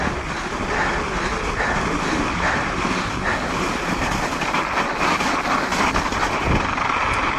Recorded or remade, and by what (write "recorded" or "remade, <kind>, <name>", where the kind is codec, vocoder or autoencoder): recorded